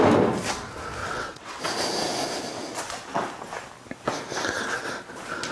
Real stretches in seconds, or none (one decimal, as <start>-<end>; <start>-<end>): 0.0-1.0; 1.6-5.5